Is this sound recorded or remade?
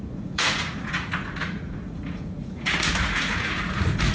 remade